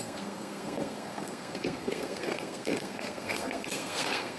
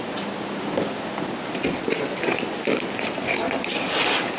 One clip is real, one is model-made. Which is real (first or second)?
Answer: second